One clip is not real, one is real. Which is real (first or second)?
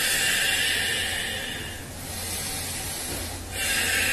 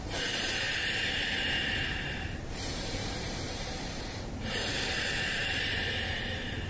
first